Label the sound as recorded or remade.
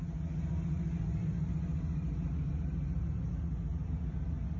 recorded